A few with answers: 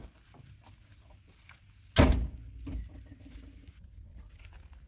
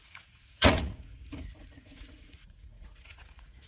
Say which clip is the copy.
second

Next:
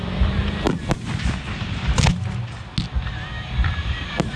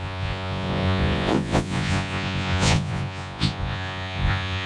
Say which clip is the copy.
second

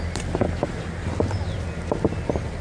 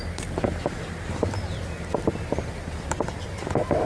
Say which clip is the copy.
second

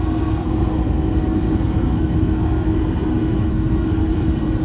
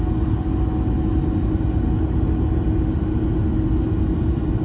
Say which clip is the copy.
first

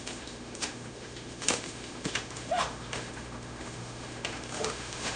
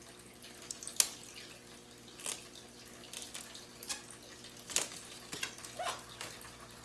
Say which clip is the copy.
first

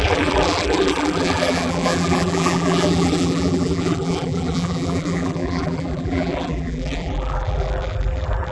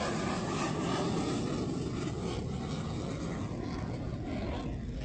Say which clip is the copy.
first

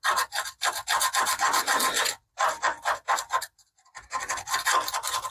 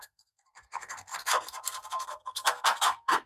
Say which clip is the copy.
second